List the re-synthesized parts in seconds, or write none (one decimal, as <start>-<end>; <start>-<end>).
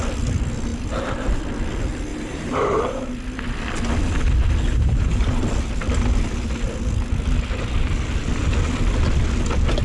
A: 0.7-1.4; 2.1-3.0; 4.7-5.4